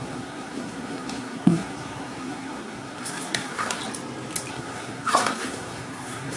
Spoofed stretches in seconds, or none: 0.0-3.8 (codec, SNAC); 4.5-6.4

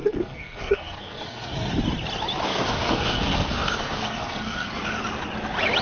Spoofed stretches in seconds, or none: 0.0-1.7 (codec, SNAC); 2.5-4.7

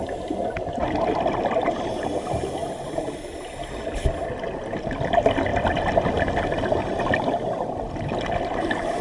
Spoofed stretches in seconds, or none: none

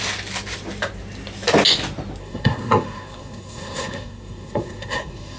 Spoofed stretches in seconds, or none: 2.2-5.4 (codec, SNAC)

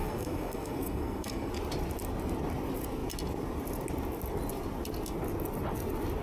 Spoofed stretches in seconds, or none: 0.0-1.5 (codec, SNAC)

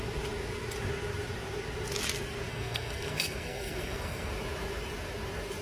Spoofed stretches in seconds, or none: 2.5-4.3 (codec, SNAC)

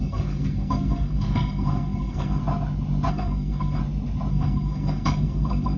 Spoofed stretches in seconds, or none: 0.0-2.4 (codec, SNAC); 3.1-3.8; 4.3-5.8